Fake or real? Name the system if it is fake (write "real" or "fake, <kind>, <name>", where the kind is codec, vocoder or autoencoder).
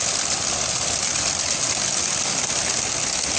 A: real